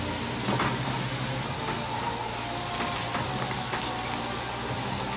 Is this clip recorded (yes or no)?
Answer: yes